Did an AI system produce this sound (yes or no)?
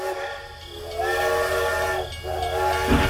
no